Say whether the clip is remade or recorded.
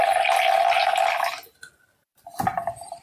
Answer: recorded